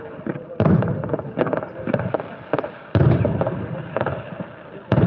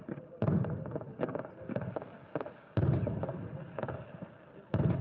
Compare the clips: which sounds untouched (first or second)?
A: second